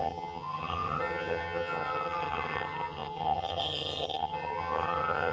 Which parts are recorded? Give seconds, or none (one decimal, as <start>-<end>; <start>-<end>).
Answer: none